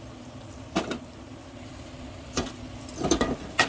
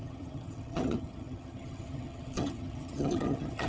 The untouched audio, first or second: first